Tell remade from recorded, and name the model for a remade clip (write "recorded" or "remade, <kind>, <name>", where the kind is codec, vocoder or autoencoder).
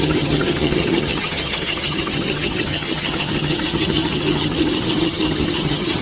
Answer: remade, vocoder, HiFi-GAN